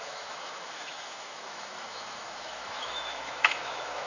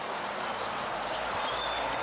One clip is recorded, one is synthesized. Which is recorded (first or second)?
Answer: second